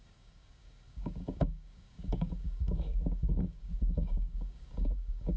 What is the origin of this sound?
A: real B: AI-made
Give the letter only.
B